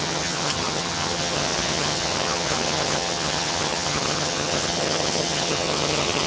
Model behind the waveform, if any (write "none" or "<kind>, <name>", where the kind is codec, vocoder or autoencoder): vocoder, HiFi-GAN